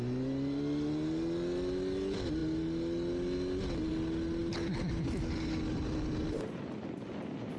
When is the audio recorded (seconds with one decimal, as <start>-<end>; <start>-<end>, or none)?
0.0-7.6

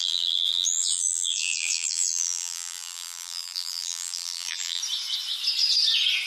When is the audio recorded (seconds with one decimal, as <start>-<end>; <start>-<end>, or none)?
4.8-6.3

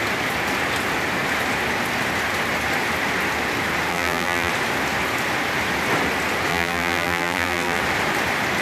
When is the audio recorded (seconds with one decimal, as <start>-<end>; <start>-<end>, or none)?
0.0-3.9; 4.5-6.5; 7.8-8.6

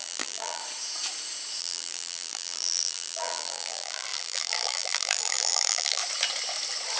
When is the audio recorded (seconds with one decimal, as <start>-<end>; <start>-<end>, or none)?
0.6-1.6; 6.0-7.0

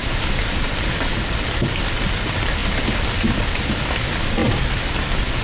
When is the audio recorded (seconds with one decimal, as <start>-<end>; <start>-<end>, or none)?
1.6-2.6; 4.0-4.4

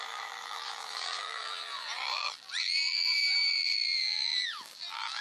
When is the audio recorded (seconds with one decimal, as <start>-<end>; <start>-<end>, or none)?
none

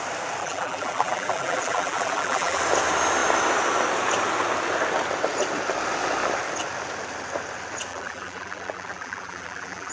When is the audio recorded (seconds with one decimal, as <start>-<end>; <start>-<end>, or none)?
0.0-0.4; 2.6-7.9

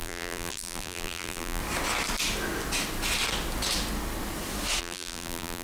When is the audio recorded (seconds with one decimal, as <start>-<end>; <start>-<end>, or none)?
1.6-4.8